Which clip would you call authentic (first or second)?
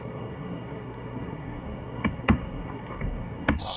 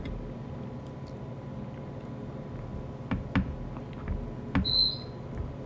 second